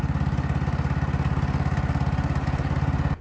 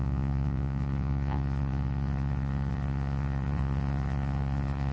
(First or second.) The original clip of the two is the first